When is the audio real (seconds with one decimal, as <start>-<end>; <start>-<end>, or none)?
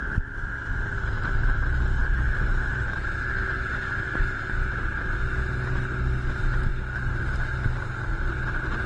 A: 0.0-8.9